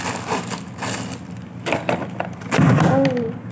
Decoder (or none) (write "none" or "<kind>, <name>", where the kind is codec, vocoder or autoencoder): none